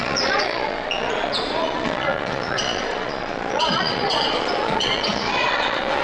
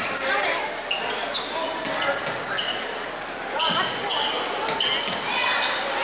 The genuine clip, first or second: second